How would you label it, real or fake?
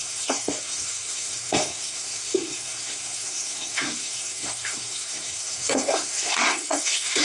fake